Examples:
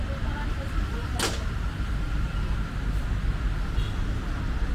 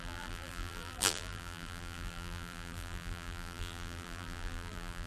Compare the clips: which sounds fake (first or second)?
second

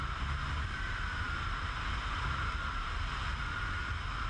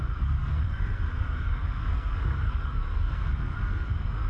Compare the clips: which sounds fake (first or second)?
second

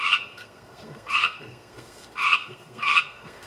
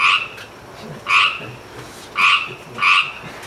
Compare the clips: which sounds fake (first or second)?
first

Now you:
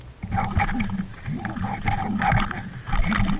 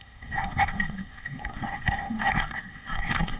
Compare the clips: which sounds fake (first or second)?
second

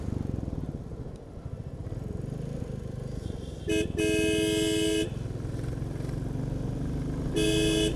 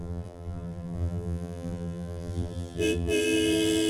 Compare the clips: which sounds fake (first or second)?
second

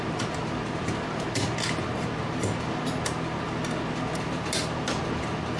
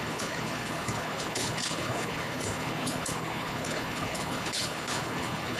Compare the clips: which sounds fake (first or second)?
second